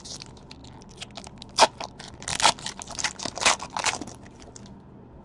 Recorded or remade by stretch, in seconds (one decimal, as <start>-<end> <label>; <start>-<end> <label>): 0.0-5.2 recorded